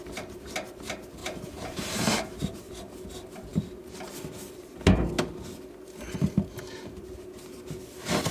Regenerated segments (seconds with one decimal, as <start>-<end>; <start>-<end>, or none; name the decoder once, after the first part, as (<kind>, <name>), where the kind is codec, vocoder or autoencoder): 1.2-2.7 (vocoder, BigVGAN v2)